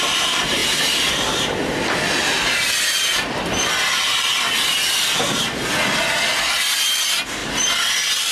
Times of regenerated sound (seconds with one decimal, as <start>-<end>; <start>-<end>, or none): none